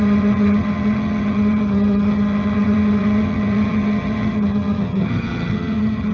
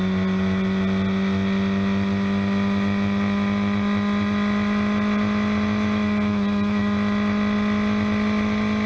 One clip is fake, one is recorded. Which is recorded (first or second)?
second